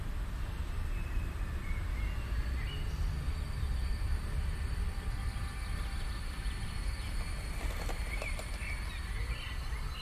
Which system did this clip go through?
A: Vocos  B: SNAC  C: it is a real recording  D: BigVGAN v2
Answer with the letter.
C